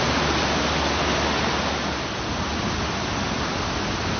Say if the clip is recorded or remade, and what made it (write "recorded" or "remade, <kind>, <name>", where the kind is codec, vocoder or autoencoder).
recorded